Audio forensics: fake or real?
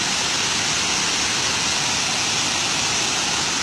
real